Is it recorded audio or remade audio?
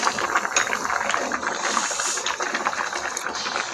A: remade